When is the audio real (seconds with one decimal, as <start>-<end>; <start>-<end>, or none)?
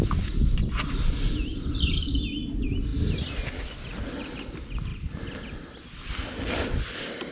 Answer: 0.0-7.3